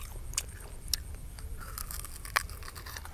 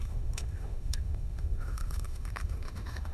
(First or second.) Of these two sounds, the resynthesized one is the second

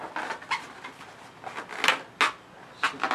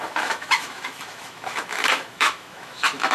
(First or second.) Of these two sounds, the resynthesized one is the second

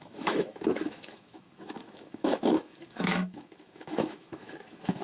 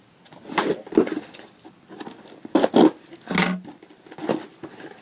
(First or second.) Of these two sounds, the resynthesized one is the first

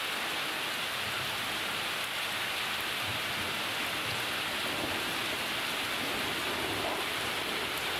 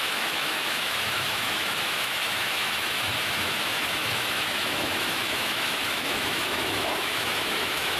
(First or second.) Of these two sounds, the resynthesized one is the second